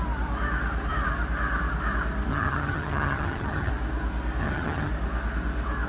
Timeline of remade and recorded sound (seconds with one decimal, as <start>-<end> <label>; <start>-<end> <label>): 0.0-2.3 recorded; 2.3-3.7 remade; 3.7-4.4 recorded; 4.4-4.9 remade; 4.9-5.9 recorded